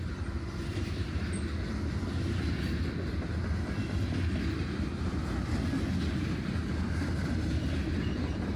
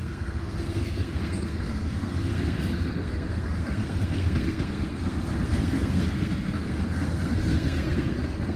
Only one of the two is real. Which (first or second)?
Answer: first